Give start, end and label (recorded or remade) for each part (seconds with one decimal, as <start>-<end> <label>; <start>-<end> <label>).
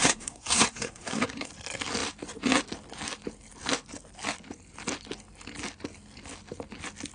0.0-1.5 remade; 1.5-7.1 recorded